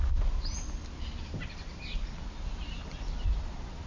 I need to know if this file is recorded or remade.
recorded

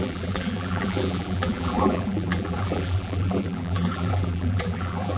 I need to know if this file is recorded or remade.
remade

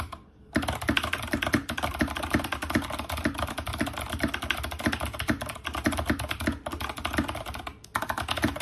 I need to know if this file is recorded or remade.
recorded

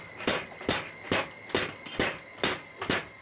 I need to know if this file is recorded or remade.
recorded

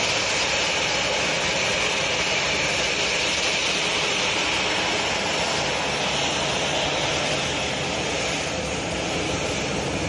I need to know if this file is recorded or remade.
recorded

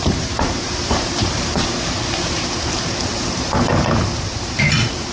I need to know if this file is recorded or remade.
remade